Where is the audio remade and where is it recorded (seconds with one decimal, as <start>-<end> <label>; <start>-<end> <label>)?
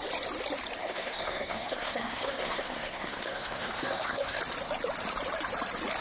0.0-0.8 recorded; 0.8-4.4 remade; 4.4-6.0 recorded